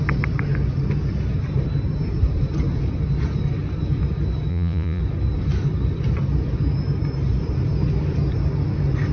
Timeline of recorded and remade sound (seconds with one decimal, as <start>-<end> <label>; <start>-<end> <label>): 0.0-4.5 recorded; 4.5-5.0 remade; 5.0-9.1 recorded